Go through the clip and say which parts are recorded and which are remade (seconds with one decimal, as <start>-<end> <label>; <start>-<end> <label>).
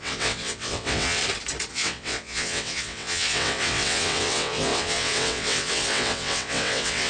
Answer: 0.0-1.2 remade; 1.2-1.7 recorded; 1.7-7.1 remade